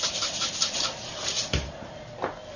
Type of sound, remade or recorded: recorded